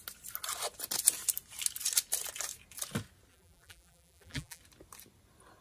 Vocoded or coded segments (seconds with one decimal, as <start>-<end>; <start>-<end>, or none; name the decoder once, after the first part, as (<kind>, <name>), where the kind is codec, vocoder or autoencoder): 3.3-4.6 (vocoder, BigVGAN v2)